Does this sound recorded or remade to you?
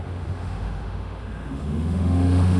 remade